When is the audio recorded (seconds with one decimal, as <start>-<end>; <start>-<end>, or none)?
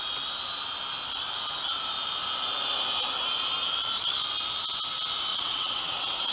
0.0-5.3